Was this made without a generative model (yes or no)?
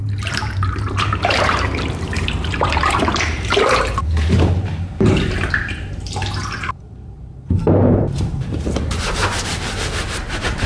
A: no